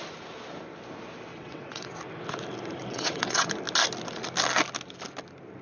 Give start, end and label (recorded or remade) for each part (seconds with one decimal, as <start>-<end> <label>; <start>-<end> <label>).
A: 0.0-1.3 recorded; 1.3-1.9 remade; 1.9-2.8 recorded; 2.8-3.5 remade; 3.5-5.6 recorded